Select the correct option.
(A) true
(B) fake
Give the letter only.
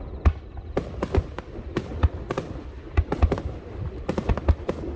A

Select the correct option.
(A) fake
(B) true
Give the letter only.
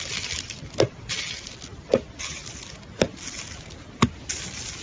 B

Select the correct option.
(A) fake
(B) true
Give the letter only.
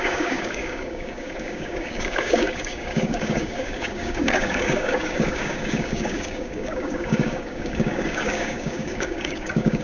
A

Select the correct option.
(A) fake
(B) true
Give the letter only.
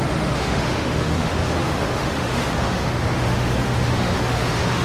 A